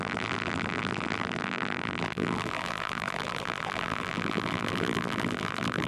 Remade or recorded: remade